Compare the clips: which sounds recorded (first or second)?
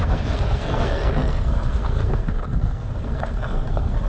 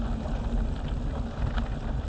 second